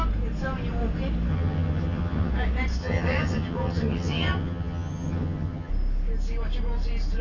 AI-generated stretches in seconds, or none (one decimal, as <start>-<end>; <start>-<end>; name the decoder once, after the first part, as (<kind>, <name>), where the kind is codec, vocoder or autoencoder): 1.3-2.3 (vocoder, HiFi-GAN); 2.8-5.7